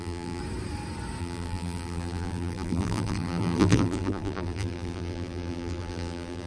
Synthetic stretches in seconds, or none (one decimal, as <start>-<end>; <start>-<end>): 0.0-0.4; 1.2-6.5

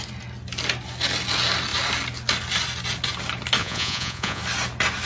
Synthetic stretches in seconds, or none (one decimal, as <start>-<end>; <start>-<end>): 3.6-4.4

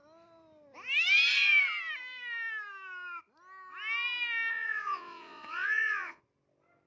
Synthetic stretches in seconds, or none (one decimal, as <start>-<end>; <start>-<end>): 4.5-6.2

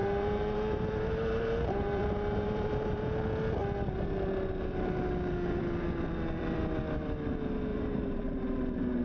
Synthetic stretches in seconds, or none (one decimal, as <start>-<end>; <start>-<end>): 0.0-3.0; 7.7-9.0

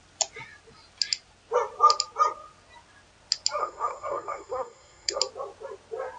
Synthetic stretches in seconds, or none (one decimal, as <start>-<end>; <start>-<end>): 3.6-5.2

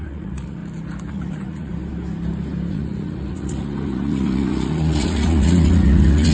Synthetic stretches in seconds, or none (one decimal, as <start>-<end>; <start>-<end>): 0.0-0.6; 1.1-1.7; 2.7-6.3

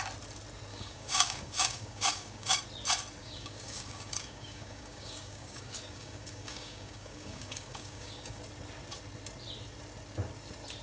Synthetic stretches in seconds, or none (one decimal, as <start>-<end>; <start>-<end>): 0.7-2.6; 3.2-8.4